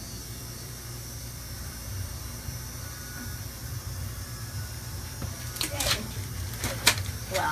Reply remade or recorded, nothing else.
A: remade